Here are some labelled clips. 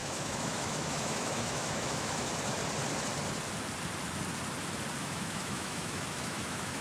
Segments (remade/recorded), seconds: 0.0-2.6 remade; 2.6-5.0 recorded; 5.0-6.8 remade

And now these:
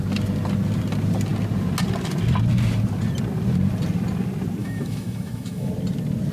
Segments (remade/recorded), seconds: 0.0-4.6 recorded; 4.6-5.7 remade; 5.7-6.3 recorded